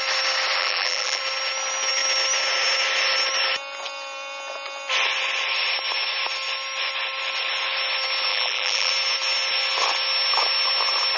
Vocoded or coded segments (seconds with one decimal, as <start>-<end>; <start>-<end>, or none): 0.6-1.2; 8.3-8.9